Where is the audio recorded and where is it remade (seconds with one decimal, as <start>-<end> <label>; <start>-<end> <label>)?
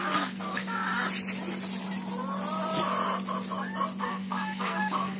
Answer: 0.0-0.9 remade; 0.9-4.0 recorded; 4.0-5.2 remade